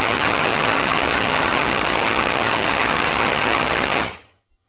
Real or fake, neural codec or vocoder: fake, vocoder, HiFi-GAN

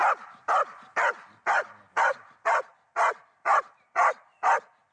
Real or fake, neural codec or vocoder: real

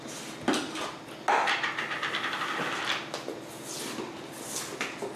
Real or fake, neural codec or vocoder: real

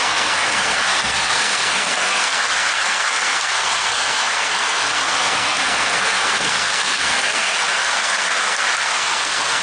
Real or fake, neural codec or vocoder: fake, codec, SNAC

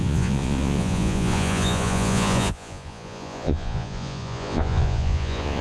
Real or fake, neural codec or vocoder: fake, vocoder, Vocos